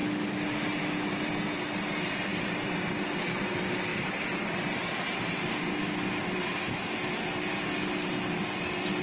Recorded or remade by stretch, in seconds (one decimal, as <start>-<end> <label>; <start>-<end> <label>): 0.0-9.0 recorded